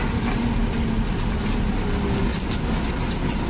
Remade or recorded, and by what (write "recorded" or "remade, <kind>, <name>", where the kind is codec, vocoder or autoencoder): recorded